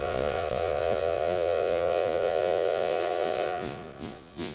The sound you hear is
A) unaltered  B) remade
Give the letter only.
B